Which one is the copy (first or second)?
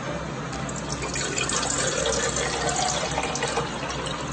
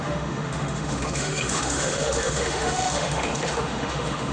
second